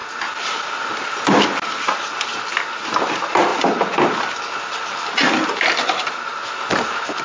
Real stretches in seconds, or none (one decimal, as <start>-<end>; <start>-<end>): 0.0-7.2